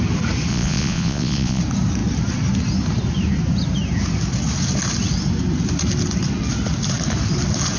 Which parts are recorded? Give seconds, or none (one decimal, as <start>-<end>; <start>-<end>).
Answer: 0.0-0.5; 1.6-7.8